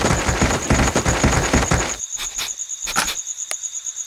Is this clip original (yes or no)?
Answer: no